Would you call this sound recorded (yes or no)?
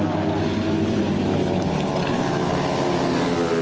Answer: yes